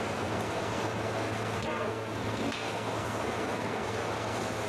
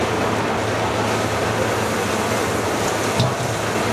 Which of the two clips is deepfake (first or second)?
first